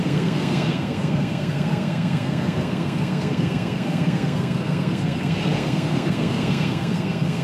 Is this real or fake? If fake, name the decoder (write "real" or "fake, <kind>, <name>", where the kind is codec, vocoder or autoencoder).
fake, codec, SNAC